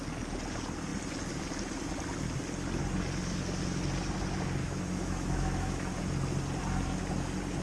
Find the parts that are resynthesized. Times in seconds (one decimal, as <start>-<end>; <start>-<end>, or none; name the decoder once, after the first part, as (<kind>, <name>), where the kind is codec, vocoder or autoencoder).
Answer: 4.6-6.0 (autoencoder, DAC-VAE)